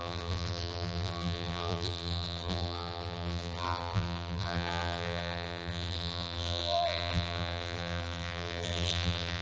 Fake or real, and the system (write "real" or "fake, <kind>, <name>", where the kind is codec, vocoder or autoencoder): fake, vocoder, BigVGAN v2